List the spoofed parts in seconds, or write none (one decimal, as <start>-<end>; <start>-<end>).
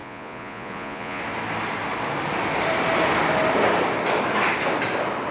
0.0-1.2